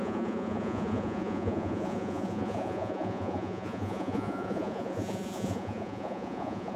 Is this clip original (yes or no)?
no